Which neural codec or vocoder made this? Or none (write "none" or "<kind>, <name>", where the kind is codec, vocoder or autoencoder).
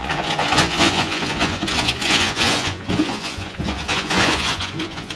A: vocoder, Vocos